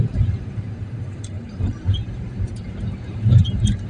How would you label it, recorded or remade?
remade